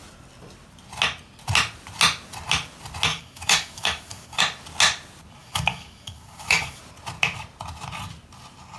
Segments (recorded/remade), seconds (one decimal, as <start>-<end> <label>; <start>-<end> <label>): 0.0-3.1 recorded; 3.1-4.4 remade; 4.4-5.4 recorded; 5.4-6.8 remade; 6.8-8.8 recorded